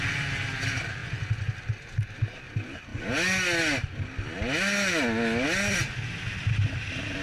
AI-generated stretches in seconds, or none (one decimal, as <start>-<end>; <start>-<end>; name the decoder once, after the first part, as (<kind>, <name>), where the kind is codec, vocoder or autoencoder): none